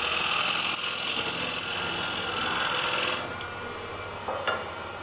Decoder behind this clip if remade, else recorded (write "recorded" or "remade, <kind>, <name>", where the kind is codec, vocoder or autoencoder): recorded